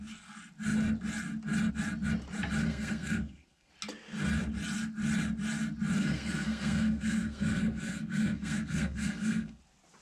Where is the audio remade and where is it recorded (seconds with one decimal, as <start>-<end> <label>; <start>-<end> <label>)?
0.0-2.6 recorded; 2.6-3.7 remade; 3.7-6.0 recorded; 6.0-9.6 remade; 9.6-10.0 recorded